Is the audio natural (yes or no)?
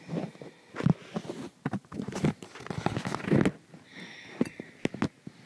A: yes